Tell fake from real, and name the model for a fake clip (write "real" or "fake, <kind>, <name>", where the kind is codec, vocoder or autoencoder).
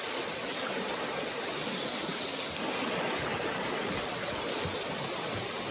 real